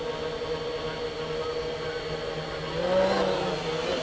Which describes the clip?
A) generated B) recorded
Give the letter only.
B